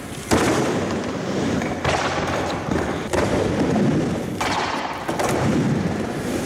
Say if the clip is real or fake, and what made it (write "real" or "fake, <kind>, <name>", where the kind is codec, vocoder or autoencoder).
real